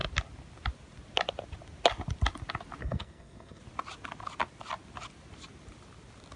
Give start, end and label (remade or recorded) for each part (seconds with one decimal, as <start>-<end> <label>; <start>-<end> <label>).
0.0-2.8 recorded; 2.8-3.6 remade; 3.6-6.4 recorded